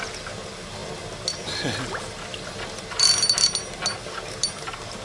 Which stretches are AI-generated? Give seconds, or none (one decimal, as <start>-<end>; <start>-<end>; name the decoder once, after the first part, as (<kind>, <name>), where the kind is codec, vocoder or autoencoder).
none